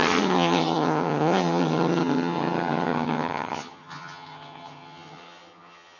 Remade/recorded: remade